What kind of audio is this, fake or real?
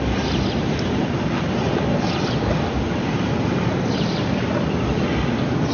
real